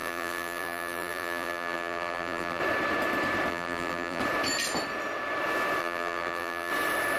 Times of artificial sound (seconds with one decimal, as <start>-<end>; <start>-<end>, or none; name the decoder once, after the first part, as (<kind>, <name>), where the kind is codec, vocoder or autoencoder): 0.0-2.6 (vocoder, BigVGAN v2); 3.5-4.2; 5.8-6.7